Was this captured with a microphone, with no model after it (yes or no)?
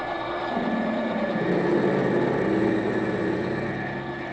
yes